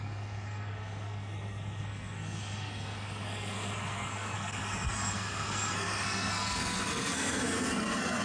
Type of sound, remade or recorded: remade